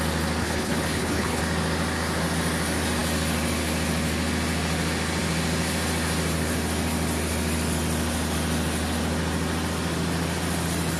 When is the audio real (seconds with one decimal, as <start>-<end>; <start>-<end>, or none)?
0.0-0.4; 1.4-11.0